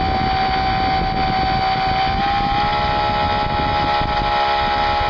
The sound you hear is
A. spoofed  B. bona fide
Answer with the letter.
B